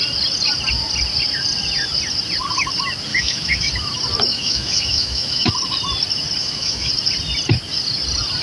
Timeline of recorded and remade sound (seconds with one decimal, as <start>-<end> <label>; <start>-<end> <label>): 0.0-3.1 recorded; 3.1-3.7 remade; 3.7-4.3 recorded; 4.3-5.5 remade; 5.5-6.4 recorded; 6.4-6.9 remade; 6.9-8.4 recorded

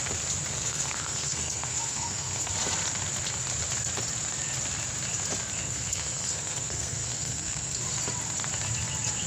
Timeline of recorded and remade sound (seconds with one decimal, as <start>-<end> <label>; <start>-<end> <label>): 0.0-0.5 recorded; 0.5-2.5 remade; 2.5-5.6 recorded; 5.6-7.8 remade; 7.8-9.3 recorded

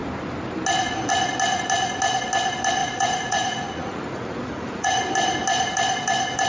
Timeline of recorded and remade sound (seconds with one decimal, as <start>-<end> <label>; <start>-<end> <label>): 0.0-2.8 recorded; 2.8-5.0 remade; 5.0-6.5 recorded

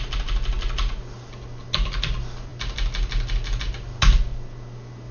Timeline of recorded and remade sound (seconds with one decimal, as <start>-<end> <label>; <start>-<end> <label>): 0.0-5.1 recorded